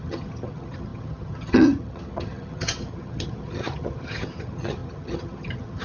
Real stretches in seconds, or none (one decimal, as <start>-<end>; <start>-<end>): none